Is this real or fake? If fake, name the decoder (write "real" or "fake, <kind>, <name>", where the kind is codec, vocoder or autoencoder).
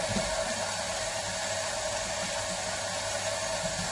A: real